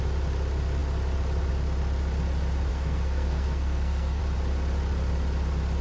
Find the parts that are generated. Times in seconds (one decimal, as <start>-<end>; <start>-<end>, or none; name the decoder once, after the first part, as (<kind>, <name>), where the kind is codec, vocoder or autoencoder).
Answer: 2.7-4.2 (codec, SNAC)